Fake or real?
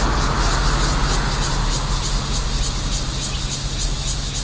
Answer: real